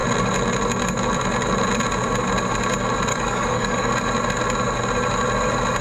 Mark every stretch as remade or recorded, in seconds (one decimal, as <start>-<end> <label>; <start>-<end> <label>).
0.0-3.1 recorded; 3.1-3.9 remade; 3.9-5.8 recorded